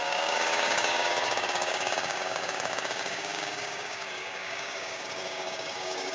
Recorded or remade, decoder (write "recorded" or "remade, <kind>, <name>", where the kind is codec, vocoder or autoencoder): remade, codec, DAC